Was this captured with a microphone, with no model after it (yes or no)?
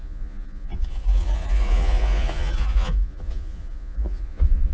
no